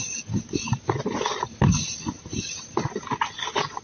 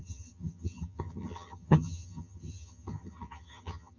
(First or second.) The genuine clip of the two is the first